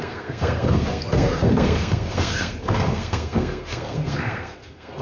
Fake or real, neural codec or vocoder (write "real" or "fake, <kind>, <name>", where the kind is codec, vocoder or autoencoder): fake, codec, SNAC